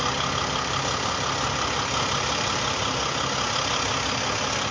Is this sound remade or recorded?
recorded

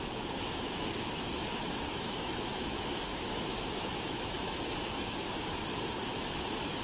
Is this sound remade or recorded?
remade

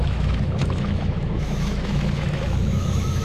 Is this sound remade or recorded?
remade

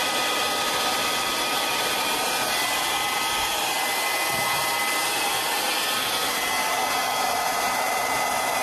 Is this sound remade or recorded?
recorded